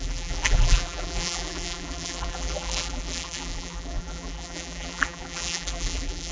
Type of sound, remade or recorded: remade